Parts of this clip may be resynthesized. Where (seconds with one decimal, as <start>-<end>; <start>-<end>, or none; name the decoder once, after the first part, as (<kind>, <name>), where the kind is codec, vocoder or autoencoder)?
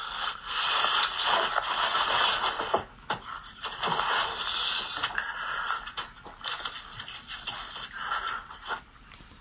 0.0-0.6 (codec, SNAC)